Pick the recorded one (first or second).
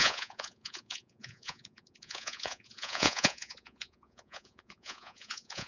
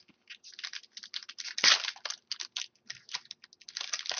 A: second